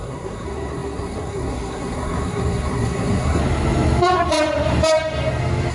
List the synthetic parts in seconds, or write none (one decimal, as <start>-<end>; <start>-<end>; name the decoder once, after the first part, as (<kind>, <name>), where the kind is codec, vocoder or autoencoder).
0.0-3.4 (codec, SNAC)